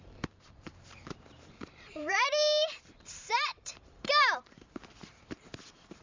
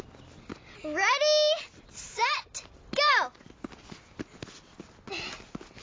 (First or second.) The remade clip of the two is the first